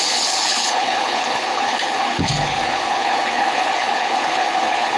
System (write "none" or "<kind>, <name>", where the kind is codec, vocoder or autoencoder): codec, HILCodec